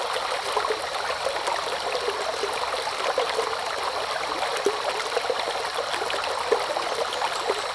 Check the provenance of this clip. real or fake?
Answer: real